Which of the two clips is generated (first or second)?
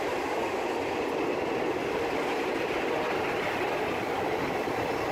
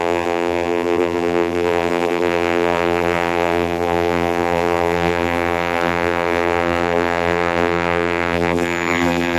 second